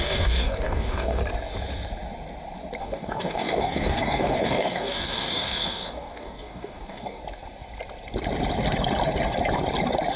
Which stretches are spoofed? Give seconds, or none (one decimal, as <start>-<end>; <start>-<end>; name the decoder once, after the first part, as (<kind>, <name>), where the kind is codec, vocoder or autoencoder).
0.0-1.2 (codec, DAC); 2.8-7.2